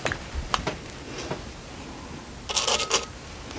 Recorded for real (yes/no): yes